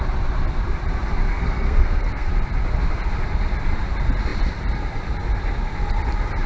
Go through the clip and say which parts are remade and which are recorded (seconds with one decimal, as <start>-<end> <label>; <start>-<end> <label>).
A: 0.0-1.3 recorded; 1.3-2.3 remade; 2.3-6.5 recorded